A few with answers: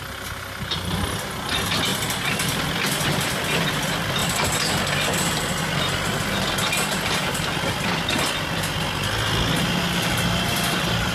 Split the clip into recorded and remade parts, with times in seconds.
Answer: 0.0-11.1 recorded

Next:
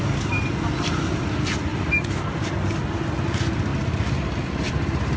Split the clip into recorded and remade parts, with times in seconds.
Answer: 0.0-5.2 recorded

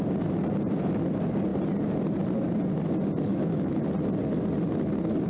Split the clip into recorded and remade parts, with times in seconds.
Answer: 0.0-3.3 recorded; 3.3-3.8 remade; 3.8-5.3 recorded

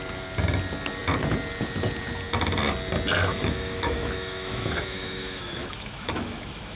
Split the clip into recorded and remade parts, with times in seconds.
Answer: 0.0-3.3 recorded; 3.3-6.8 remade

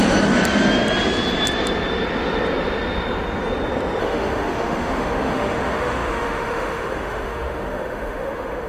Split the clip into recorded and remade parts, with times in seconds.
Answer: 0.0-4.0 recorded; 4.0-8.7 remade

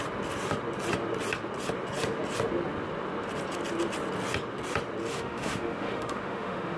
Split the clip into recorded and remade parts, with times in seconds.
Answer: 0.0-5.1 recorded; 5.1-6.8 remade

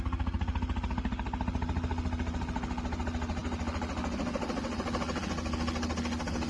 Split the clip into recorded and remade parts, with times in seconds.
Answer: 0.0-6.5 recorded